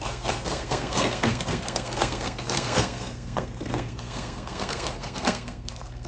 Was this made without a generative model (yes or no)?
no